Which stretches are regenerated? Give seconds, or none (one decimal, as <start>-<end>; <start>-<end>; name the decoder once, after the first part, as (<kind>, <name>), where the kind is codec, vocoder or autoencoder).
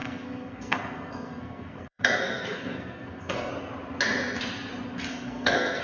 0.0-3.5 (codec, SNAC); 5.1-5.8